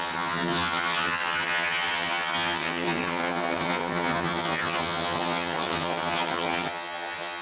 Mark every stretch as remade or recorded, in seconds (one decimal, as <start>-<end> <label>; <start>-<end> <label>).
0.0-7.4 remade